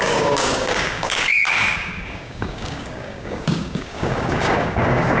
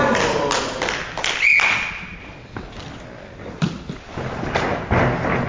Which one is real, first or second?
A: second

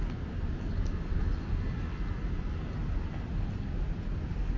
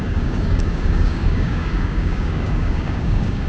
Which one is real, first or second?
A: first